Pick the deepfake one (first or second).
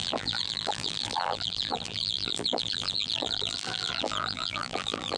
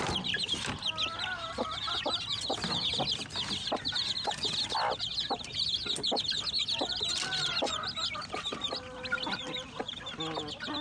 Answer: first